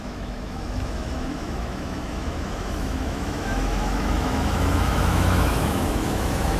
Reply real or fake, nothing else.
fake